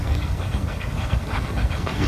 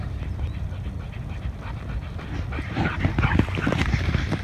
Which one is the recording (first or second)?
second